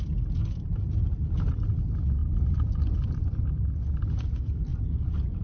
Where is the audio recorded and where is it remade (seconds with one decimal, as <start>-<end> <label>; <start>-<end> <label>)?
0.0-4.7 recorded; 4.7-5.4 remade